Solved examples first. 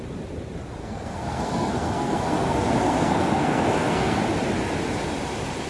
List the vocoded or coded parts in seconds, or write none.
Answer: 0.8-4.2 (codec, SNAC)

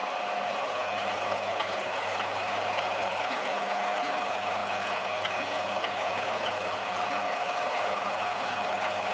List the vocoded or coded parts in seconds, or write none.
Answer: 0.5-9.1 (codec, HILCodec)

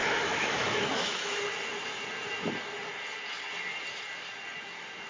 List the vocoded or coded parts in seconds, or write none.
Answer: 0.0-1.4 (autoencoder, DAC-VAE)

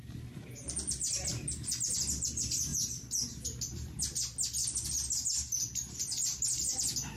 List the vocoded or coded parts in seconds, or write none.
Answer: none

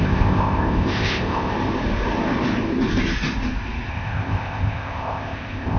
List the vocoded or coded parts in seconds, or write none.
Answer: 0.0-1.5 (codec, ZipCodec); 3.9-5.8

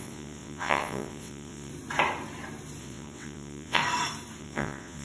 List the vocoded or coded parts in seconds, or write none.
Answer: 0.0-1.7 (vocoder, WaveNeXt); 2.8-3.8; 4.4-5.0

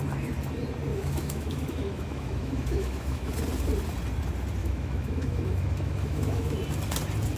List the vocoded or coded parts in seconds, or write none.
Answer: 0.9-3.3 (autoencoder, DAC-VAE); 4.6-6.6